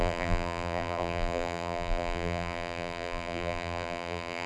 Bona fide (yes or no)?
no